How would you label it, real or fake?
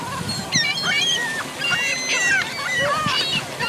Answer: real